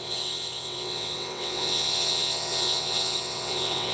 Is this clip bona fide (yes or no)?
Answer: no